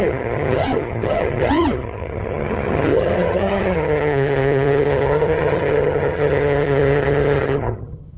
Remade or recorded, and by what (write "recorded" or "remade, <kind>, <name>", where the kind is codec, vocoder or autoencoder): remade, vocoder, HiFi-GAN